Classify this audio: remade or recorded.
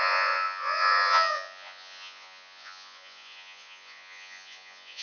remade